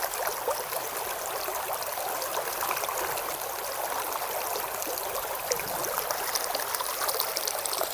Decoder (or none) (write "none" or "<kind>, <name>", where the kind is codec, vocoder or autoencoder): none